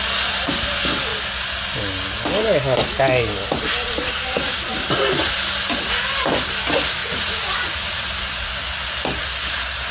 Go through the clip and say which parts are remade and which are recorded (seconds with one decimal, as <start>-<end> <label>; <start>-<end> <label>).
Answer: 0.0-7.0 recorded; 7.0-8.1 remade; 8.1-9.9 recorded